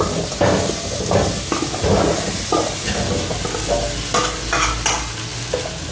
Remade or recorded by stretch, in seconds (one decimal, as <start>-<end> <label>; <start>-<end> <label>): 0.0-5.9 recorded